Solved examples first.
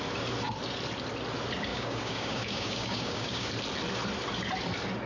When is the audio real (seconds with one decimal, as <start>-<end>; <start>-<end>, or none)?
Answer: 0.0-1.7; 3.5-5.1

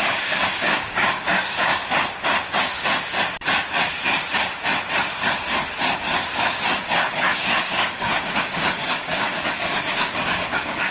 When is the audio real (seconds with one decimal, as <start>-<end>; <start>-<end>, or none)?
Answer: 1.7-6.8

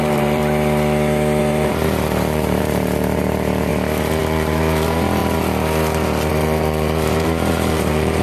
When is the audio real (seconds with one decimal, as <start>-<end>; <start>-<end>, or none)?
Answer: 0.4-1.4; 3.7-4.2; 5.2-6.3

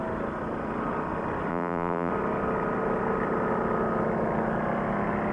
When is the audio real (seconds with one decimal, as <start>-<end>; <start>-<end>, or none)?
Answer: 0.0-1.5; 2.1-5.3

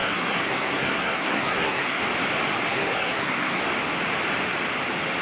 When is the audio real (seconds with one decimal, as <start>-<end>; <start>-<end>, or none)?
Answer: 2.0-2.7; 3.6-5.2